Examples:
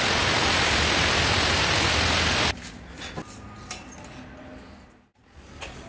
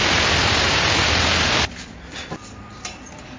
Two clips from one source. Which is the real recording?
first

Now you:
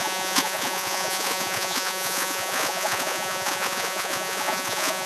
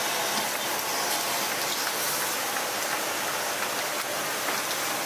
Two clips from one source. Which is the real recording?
second